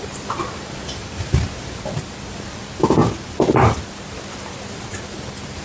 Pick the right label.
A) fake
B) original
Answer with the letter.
B